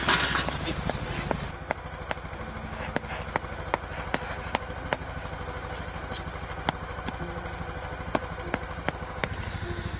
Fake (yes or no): no